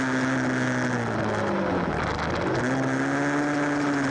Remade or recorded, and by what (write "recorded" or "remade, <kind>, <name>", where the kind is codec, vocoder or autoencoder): recorded